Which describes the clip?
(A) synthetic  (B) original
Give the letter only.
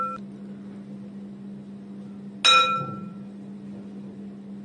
B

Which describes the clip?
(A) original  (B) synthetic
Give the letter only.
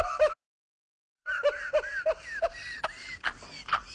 B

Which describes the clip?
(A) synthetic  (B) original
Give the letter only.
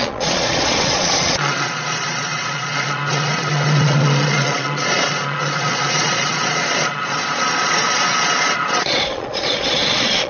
A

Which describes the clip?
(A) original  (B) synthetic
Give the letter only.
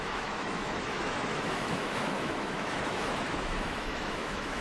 B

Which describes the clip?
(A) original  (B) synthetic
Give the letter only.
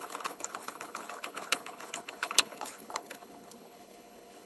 B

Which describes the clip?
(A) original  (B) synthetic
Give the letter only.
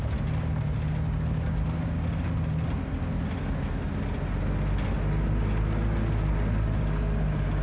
A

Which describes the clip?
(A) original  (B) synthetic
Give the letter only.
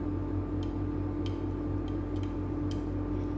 A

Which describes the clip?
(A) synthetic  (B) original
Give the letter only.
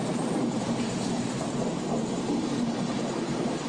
A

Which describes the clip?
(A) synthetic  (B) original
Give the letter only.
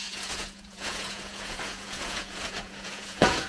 A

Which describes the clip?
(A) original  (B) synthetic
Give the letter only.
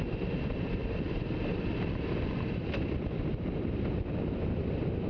A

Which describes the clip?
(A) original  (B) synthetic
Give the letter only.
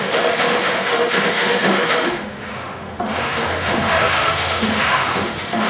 B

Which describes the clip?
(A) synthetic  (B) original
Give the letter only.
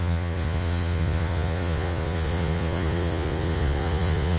A